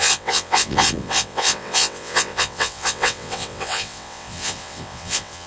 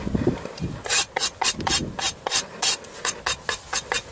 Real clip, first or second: second